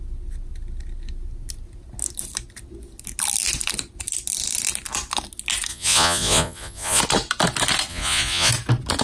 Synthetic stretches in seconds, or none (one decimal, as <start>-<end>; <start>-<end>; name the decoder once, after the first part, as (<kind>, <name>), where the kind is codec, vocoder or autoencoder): 5.7-7.0 (vocoder, Vocos); 7.9-8.5